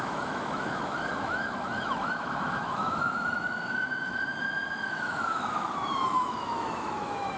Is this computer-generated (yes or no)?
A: yes